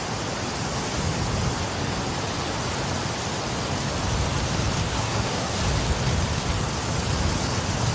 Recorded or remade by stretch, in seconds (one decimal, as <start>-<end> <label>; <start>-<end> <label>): 0.0-4.9 recorded; 4.9-5.5 remade; 5.5-7.9 recorded